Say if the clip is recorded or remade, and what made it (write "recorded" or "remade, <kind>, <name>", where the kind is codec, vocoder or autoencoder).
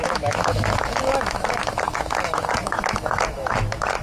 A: remade, autoencoder, DAC-VAE